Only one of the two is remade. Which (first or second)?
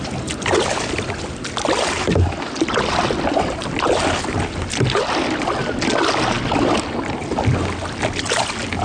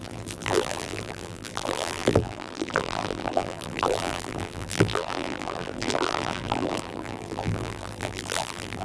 second